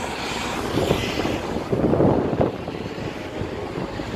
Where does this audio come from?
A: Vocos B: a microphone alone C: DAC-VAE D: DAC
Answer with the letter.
B